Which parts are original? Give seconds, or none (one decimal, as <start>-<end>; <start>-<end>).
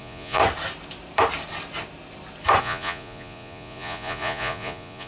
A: 0.4-2.6